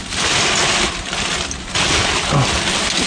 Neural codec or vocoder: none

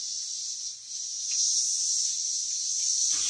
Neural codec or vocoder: none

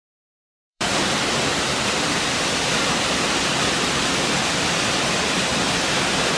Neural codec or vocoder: vocoder, BigVGAN v2